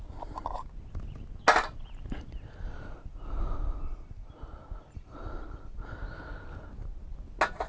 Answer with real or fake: real